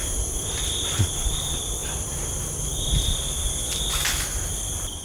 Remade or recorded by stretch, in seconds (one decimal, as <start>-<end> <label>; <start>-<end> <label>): 0.0-5.0 recorded